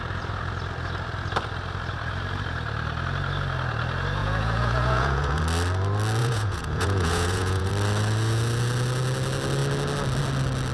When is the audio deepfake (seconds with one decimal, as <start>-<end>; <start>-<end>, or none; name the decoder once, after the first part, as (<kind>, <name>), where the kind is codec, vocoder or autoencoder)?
4.2-5.4 (vocoder, Vocos); 6.2-7.7